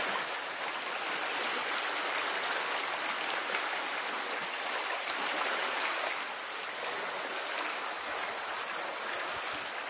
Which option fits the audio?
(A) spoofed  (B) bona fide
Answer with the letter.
B